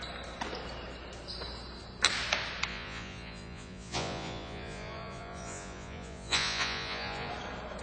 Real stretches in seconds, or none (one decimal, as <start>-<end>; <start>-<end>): 0.0-2.7; 7.3-7.8